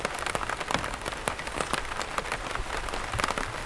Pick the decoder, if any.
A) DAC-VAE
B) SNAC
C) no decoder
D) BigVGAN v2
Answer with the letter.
C